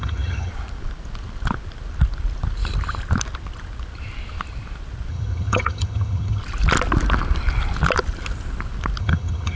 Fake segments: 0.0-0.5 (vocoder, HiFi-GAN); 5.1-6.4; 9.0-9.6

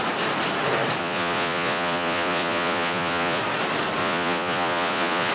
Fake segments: 1.0-3.4 (vocoder, Vocos); 4.0-5.3

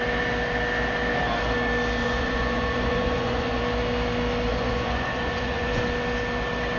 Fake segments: 2.0-3.6 (vocoder, Vocos); 4.5-5.8